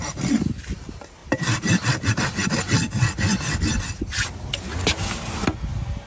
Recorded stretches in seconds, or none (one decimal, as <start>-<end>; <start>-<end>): 0.0-6.1